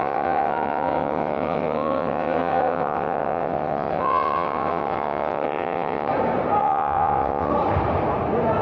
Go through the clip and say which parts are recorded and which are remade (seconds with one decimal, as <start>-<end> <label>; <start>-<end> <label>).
0.0-6.1 remade; 6.1-6.6 recorded; 6.6-7.5 remade; 7.5-8.6 recorded